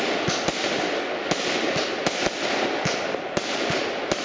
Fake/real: real